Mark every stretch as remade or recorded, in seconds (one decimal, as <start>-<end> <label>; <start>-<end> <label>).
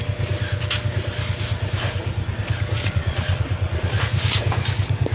0.0-2.8 recorded; 2.8-4.0 remade; 4.0-5.1 recorded